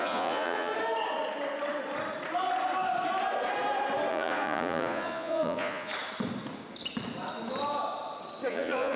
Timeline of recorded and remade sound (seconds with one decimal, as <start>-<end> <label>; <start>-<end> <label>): 0.0-0.7 remade; 0.7-4.1 recorded; 4.1-5.9 remade; 5.9-8.5 recorded; 8.5-9.0 remade